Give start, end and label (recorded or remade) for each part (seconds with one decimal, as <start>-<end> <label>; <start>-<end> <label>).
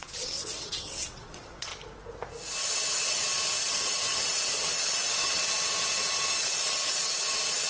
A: 0.0-1.7 remade; 1.7-2.6 recorded; 2.6-7.7 remade